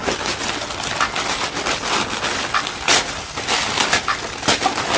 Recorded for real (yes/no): yes